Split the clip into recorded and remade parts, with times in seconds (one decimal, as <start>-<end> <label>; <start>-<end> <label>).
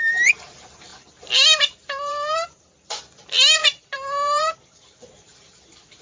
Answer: 0.0-0.9 recorded; 0.9-3.0 remade; 3.0-3.6 recorded; 3.6-6.0 remade